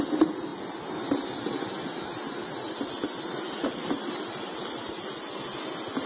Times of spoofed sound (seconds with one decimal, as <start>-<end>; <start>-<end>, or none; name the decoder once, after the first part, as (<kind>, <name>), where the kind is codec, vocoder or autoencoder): none